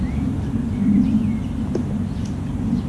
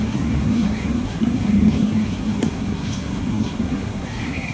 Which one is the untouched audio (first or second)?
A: first